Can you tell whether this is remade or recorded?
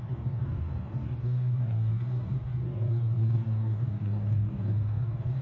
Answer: remade